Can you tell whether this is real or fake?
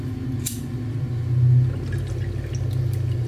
real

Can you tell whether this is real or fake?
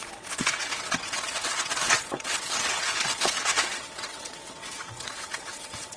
fake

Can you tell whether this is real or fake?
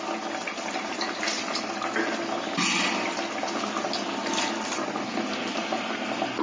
real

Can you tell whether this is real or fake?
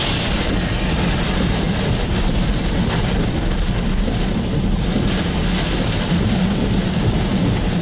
real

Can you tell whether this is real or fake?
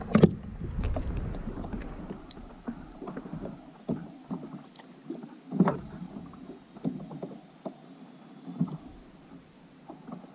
real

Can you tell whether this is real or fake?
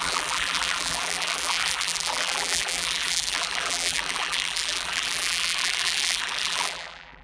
fake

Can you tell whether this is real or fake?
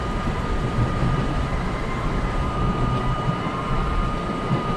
fake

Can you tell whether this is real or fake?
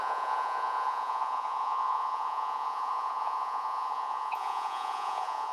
fake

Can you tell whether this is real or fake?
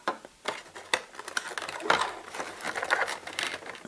real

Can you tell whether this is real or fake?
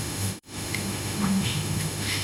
fake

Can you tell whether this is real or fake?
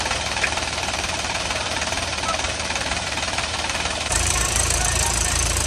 fake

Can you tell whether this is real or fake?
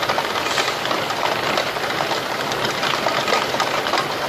real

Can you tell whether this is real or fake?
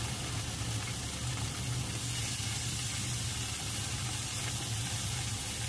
real